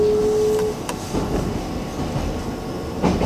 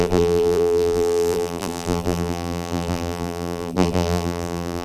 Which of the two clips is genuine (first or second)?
first